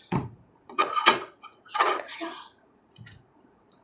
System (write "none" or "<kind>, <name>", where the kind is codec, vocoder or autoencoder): vocoder, Vocos